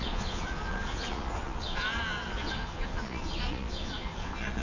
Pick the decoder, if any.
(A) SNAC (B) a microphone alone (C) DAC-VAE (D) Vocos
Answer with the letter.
D